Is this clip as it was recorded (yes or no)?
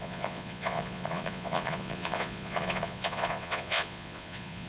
no